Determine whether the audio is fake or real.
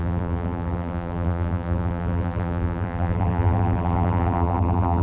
fake